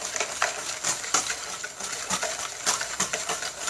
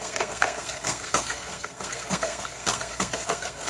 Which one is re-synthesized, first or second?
second